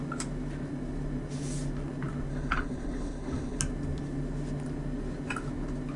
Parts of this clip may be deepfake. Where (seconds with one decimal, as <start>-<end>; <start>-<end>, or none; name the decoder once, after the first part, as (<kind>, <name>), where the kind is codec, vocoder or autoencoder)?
2.3-3.6 (codec, HILCodec)